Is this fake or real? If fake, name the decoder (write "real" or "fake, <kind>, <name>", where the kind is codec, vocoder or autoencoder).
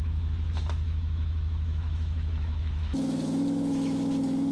fake, autoencoder, DAC-VAE